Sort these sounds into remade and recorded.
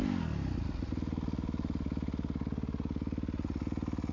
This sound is recorded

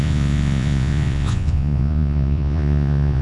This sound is remade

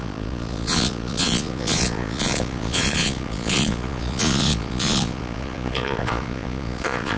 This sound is remade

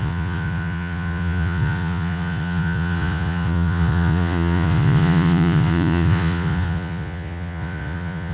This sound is remade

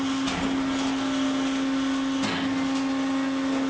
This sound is recorded